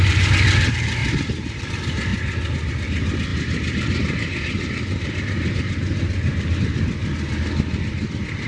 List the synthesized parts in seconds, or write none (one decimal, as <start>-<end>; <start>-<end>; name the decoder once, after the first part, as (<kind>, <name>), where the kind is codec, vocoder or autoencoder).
1.0-1.7 (vocoder, BigVGAN v2); 3.3-6.6